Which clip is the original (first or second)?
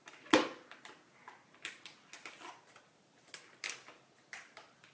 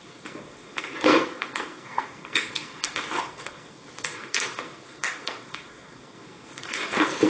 first